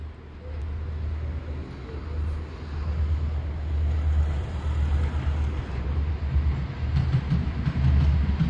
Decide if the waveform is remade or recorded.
recorded